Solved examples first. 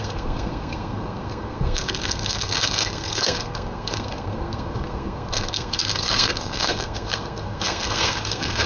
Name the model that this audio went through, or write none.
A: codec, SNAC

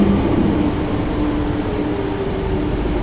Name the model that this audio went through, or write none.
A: none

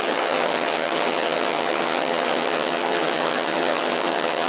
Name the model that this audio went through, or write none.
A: vocoder, HiFi-GAN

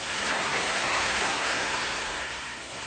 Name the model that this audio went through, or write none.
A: codec, SNAC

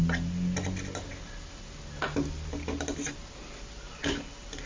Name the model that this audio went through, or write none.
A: none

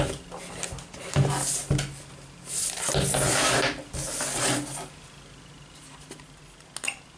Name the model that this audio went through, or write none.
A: none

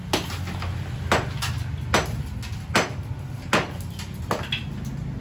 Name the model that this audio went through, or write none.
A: none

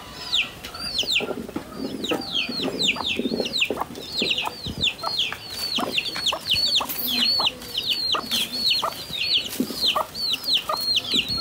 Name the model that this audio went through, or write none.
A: vocoder, BigVGAN v2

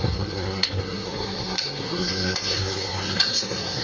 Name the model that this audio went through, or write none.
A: codec, SNAC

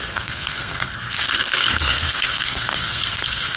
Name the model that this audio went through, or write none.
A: codec, SNAC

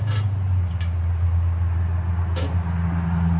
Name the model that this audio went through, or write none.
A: none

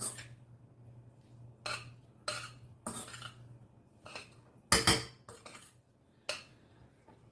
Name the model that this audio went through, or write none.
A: none